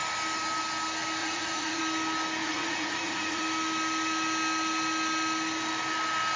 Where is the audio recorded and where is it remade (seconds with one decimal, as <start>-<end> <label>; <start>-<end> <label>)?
0.0-1.2 recorded; 1.2-1.8 remade; 1.8-2.4 recorded; 2.4-3.4 remade; 3.4-6.4 recorded